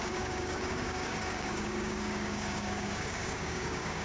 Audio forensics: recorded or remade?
remade